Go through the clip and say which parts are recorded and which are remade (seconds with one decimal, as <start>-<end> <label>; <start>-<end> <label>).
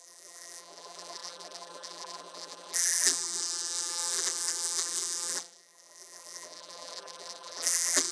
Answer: 0.0-8.1 remade